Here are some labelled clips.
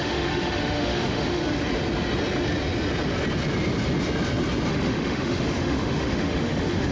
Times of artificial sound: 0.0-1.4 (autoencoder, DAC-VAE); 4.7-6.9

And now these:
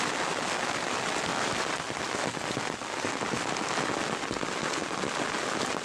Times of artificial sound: 1.3-2.5 (vocoder, BigVGAN v2)

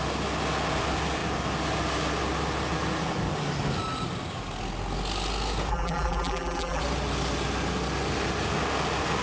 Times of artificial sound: 5.7-6.8 (vocoder, BigVGAN v2)

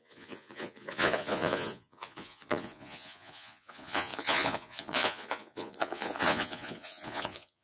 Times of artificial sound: 0.0-7.6 (vocoder, Vocos)

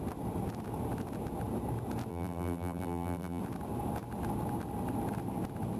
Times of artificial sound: 2.1-3.4 (vocoder, BigVGAN v2)